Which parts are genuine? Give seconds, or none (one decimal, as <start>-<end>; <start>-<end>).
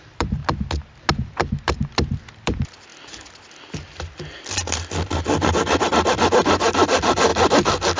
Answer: 0.4-1.1; 2.9-5.5